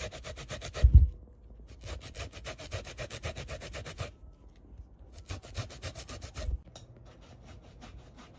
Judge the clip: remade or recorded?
recorded